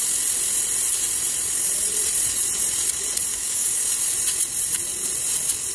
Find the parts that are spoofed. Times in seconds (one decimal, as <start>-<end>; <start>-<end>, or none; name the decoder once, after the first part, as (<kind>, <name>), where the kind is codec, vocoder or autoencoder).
3.3-3.8 (codec, DAC)